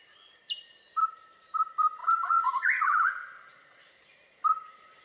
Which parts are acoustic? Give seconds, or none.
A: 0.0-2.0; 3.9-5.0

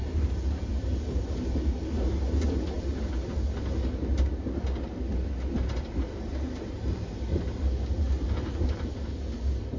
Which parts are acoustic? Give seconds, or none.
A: 0.0-9.8

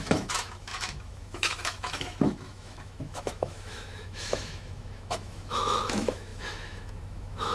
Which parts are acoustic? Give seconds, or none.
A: none

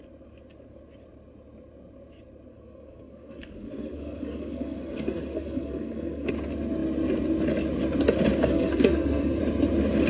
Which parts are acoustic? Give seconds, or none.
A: 0.0-2.5; 6.3-8.4; 9.4-10.1

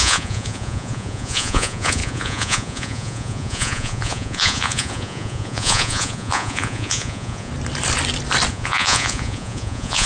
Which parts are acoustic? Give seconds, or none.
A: 7.5-8.5